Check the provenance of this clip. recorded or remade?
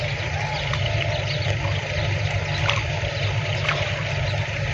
recorded